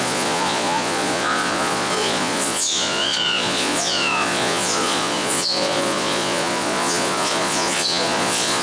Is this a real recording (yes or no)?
no